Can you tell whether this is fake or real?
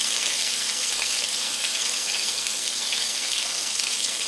fake